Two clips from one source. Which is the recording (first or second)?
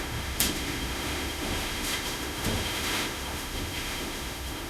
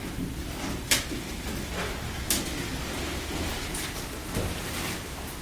second